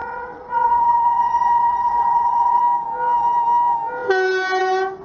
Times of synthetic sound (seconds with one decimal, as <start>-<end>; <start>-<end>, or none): 0.0-2.6